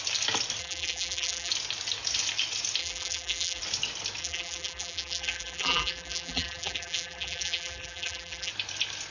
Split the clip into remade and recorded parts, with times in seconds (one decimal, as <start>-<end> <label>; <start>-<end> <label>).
0.0-0.6 recorded; 0.6-1.5 remade; 1.5-2.8 recorded; 2.8-3.6 remade; 3.6-4.2 recorded; 4.2-8.5 remade; 8.5-9.1 recorded